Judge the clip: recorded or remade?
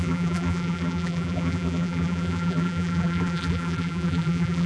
remade